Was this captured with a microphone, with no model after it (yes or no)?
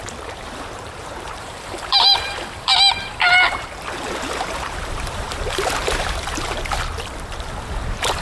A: no